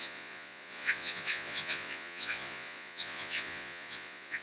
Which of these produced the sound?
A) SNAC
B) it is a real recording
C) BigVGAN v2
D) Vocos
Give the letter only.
D